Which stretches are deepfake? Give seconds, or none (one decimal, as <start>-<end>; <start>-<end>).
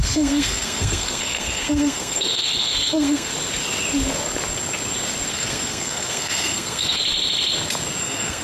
0.0-3.3; 5.3-7.0; 8.0-8.4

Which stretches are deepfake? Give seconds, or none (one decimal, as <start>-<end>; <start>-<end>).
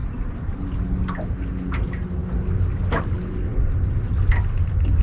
none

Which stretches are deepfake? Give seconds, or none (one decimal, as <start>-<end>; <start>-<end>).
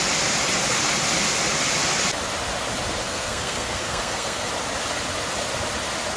3.0-4.5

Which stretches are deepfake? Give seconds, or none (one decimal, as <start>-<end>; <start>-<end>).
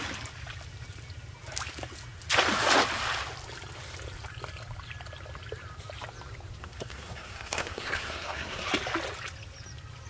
6.6-8.7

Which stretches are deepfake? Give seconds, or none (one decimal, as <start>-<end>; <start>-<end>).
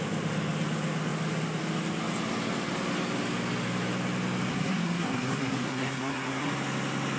4.5-6.5